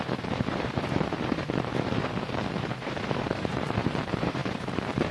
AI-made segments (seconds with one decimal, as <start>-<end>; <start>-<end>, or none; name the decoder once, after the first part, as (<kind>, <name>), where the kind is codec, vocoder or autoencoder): 0.0-5.1 (vocoder, BigVGAN v2)